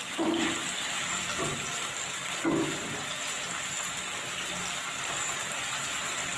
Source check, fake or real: real